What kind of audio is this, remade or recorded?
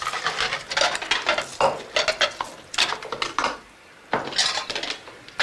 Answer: recorded